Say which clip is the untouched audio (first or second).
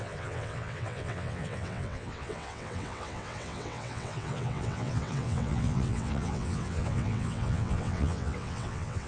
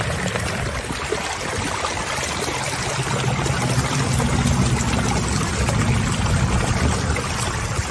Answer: second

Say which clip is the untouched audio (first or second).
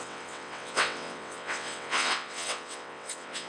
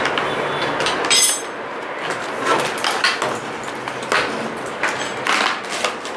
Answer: second